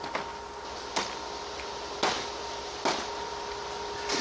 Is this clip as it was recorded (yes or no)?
yes